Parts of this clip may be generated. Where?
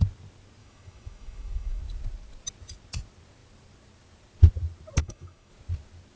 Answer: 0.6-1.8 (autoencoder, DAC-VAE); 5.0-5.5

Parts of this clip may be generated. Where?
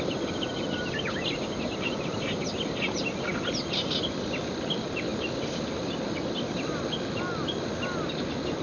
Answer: none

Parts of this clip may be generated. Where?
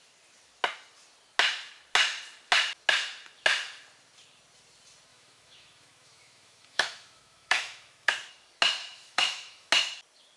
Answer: 5.1-8.1 (autoencoder, DAC-VAE); 8.8-9.7